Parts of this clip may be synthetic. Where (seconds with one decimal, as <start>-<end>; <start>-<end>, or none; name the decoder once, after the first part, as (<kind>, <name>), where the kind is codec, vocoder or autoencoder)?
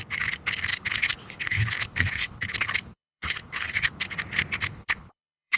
0.7-4.1 (codec, HILCodec); 4.7-5.6